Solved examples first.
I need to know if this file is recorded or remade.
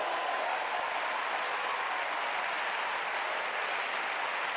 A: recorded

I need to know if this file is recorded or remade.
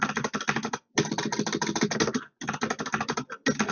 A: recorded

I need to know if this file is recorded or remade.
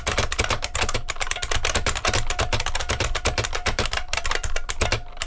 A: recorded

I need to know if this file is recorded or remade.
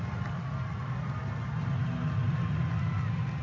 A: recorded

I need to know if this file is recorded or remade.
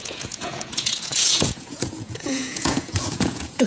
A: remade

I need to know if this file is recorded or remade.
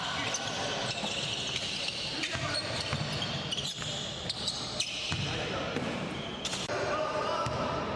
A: recorded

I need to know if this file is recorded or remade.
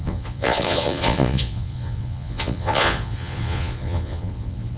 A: remade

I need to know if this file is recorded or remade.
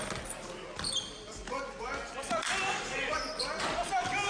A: recorded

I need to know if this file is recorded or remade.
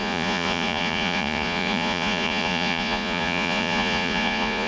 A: remade